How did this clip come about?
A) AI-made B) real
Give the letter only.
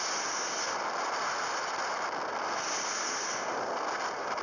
B